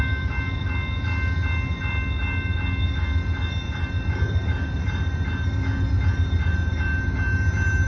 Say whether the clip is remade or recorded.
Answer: recorded